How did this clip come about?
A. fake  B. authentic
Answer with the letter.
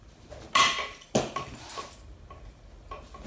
B